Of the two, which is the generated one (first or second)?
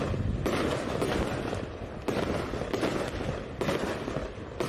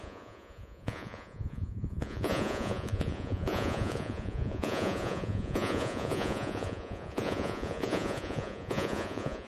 second